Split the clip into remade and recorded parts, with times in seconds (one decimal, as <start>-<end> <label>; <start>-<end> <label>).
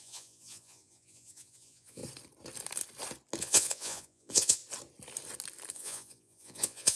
0.0-2.0 remade; 2.0-3.4 recorded; 3.4-4.6 remade; 4.6-5.7 recorded; 5.7-7.0 remade